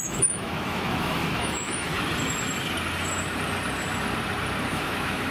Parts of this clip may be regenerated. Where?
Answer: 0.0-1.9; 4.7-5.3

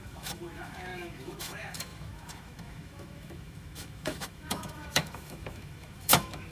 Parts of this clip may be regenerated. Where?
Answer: 0.0-6.5

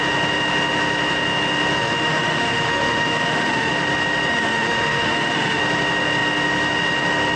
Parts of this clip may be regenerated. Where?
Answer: 1.8-3.7; 4.3-5.6

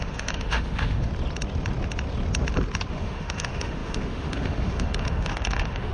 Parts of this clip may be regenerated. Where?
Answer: 0.0-1.1; 2.9-5.9